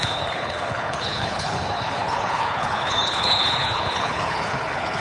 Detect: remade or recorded remade